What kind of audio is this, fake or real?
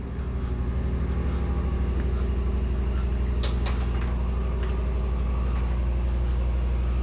real